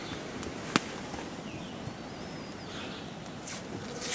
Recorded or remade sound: recorded